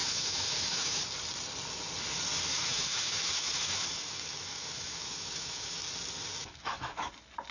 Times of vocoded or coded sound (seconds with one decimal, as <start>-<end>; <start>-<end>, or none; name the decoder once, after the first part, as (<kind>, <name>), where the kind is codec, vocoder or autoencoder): 0.0-1.0 (autoencoder, DAC-VAE); 2.5-5.8; 6.4-7.1